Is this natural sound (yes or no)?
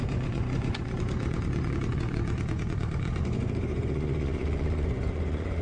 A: no